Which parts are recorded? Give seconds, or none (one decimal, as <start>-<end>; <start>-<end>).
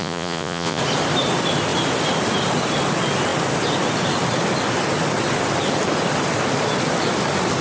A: 0.8-7.6